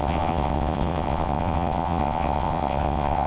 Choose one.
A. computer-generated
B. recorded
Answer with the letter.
A